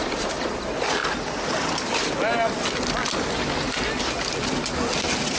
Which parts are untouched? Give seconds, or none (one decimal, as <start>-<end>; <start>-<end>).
0.6-5.4